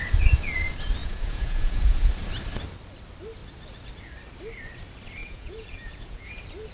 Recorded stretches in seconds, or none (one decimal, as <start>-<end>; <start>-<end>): 0.0-1.0; 2.1-5.2; 6.3-6.7